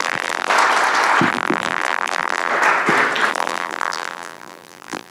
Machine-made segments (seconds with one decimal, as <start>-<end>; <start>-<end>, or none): 0.0-0.5; 1.3-2.5; 3.3-5.1